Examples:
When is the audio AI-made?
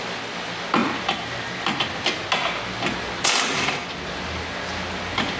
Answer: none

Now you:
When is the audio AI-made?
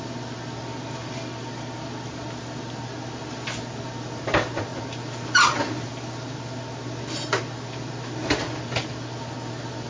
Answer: none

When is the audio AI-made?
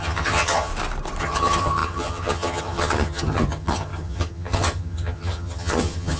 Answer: 0.0-0.7 (vocoder, HiFi-GAN); 1.2-6.2